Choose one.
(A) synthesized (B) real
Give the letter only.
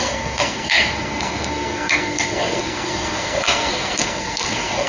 A